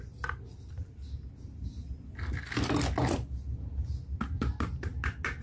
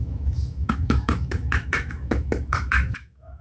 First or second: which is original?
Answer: first